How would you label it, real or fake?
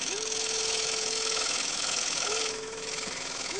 fake